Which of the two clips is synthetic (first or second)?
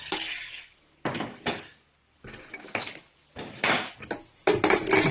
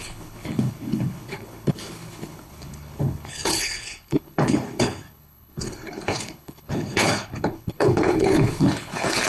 second